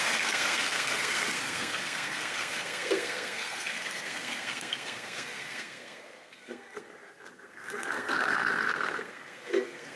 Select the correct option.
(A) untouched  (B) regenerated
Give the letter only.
B